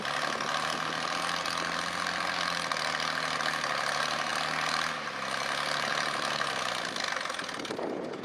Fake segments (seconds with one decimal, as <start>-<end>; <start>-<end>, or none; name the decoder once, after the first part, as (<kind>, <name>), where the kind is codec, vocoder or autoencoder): none